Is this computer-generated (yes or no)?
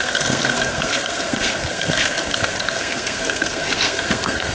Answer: yes